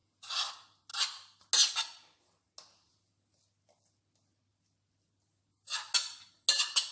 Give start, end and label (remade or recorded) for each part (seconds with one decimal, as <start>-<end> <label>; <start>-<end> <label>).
0.0-6.9 recorded